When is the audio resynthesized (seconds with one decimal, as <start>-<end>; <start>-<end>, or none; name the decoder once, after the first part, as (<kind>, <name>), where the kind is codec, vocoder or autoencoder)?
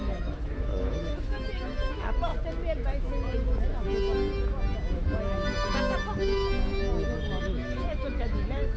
0.0-2.3 (autoencoder, DAC-VAE); 7.4-8.8